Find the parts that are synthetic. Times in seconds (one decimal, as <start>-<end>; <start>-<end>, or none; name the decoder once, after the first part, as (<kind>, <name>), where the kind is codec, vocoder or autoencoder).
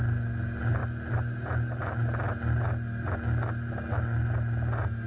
none